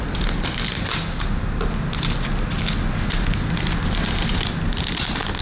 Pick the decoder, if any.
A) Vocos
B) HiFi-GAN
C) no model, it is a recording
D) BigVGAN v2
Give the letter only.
C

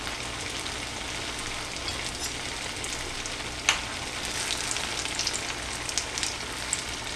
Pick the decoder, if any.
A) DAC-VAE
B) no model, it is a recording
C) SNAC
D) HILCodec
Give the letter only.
B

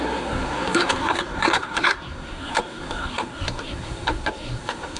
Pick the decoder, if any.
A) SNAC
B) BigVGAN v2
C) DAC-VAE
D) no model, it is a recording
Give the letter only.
A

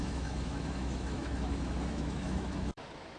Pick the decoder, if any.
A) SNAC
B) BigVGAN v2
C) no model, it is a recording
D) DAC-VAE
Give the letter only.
D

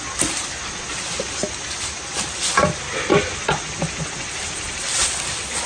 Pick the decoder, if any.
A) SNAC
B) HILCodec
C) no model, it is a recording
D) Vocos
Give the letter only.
C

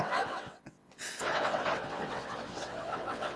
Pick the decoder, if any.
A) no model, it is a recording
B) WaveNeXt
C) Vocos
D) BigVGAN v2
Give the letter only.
B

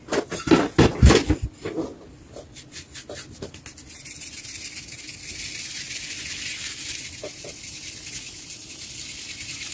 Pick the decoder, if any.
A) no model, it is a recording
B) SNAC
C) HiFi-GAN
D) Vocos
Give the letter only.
A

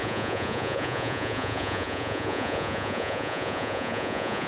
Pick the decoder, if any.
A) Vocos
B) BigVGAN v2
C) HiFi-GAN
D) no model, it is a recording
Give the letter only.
A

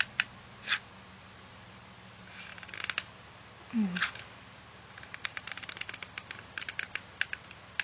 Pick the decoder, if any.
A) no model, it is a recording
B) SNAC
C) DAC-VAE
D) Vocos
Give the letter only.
A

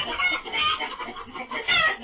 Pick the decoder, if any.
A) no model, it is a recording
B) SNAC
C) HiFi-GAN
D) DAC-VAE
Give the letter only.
A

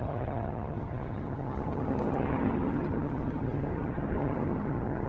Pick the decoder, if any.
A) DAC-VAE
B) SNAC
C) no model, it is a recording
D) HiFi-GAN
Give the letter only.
D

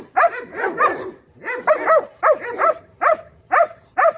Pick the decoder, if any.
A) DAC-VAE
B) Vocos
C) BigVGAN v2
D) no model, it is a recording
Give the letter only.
C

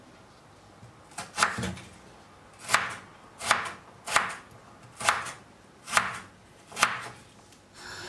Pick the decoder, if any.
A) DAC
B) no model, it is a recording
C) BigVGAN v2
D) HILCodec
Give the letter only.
B